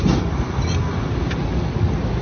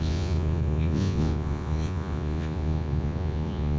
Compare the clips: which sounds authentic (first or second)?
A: first